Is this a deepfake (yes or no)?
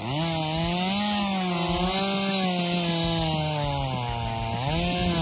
no